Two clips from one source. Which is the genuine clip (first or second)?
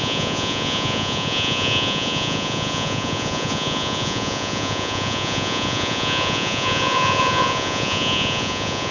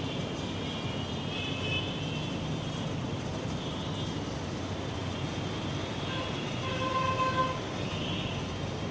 second